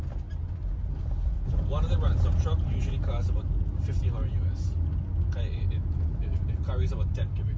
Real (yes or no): yes